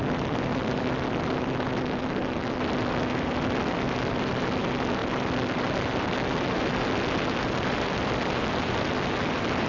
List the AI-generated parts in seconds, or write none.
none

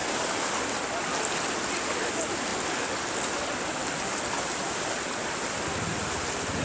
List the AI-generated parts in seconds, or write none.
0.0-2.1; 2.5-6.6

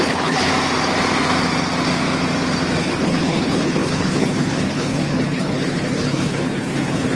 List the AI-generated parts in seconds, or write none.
0.0-0.5; 2.8-7.2

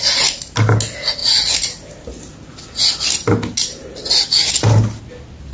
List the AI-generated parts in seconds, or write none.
none